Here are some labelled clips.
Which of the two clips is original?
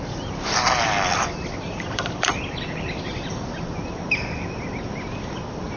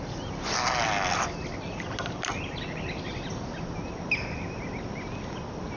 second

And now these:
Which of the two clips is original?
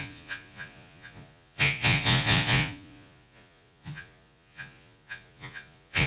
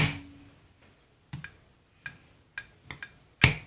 second